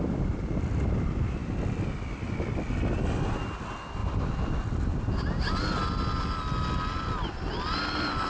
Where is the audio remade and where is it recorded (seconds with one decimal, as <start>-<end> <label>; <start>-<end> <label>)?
0.0-8.3 recorded